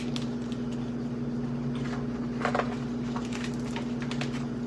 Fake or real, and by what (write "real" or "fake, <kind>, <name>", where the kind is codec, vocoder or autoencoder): real